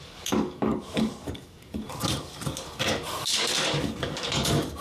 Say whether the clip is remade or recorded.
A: remade